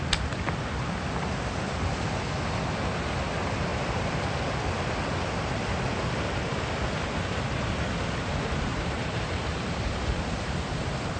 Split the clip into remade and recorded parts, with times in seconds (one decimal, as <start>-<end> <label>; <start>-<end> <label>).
0.0-3.7 recorded; 3.7-4.3 remade; 4.3-8.7 recorded; 8.7-11.2 remade